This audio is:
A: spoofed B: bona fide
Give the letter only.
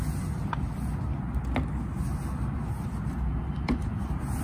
B